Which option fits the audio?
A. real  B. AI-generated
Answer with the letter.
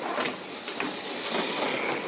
A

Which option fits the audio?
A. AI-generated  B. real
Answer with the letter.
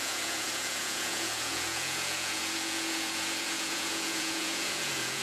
A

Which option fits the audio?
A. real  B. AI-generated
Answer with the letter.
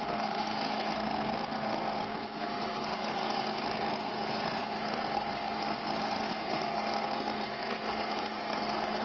B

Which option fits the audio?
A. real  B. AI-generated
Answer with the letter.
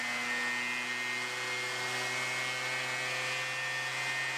A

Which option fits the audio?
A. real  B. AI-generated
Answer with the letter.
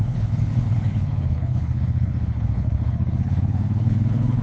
B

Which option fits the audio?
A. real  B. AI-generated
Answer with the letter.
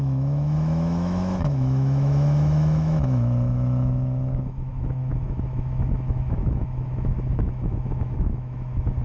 B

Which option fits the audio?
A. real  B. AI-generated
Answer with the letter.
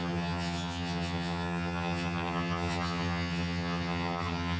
B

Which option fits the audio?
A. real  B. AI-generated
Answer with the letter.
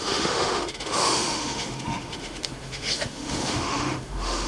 B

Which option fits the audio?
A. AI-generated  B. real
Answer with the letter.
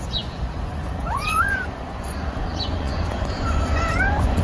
A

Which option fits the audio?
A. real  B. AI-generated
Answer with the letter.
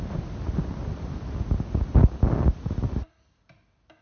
A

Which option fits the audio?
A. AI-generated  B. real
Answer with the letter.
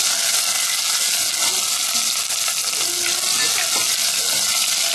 B